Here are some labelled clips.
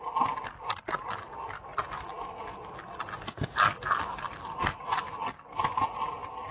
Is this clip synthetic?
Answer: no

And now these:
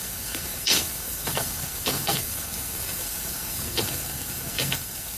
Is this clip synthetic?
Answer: yes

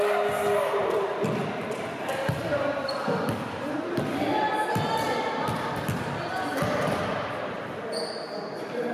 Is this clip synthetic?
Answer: no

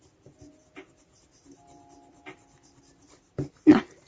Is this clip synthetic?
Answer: no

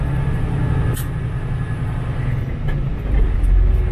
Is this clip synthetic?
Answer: no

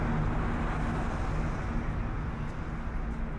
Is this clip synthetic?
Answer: no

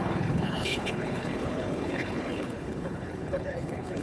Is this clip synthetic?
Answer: yes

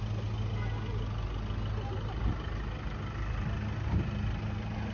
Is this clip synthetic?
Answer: no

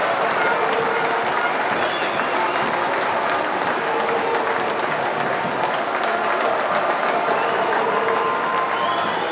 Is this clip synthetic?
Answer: no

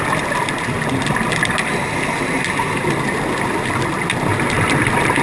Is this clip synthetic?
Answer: no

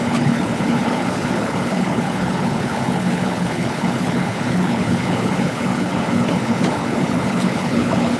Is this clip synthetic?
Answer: yes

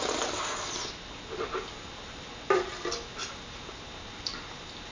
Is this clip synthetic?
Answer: no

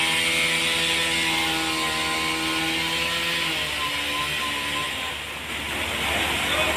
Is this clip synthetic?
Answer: no